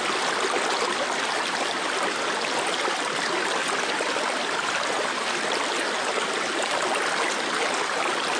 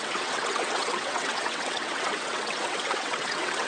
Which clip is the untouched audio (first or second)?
first